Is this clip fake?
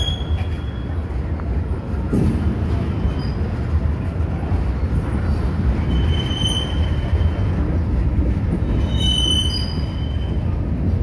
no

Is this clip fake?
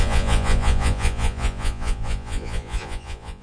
yes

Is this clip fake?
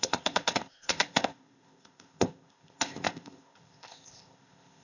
yes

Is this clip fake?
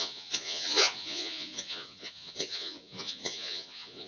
yes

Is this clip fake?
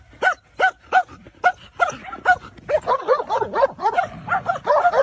no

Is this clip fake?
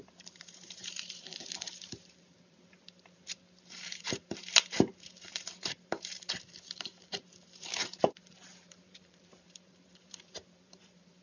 yes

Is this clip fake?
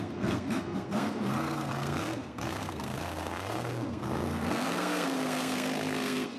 yes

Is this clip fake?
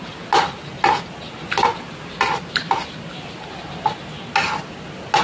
no